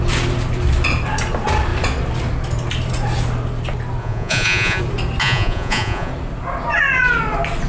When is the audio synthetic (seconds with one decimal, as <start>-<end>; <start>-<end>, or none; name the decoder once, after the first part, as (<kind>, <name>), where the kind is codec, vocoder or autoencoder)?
4.0-4.8 (vocoder, Vocos); 5.2-6.1